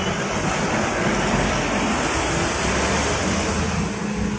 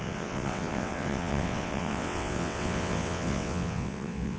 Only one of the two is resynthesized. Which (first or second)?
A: second